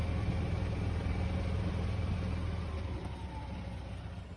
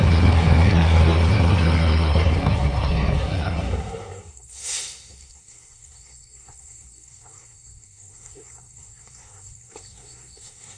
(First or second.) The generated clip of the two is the second